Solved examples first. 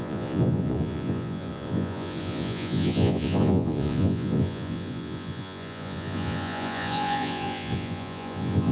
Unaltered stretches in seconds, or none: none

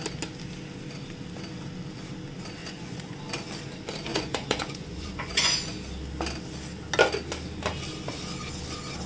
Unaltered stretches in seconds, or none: 0.0-2.6; 3.2-4.1; 5.8-9.1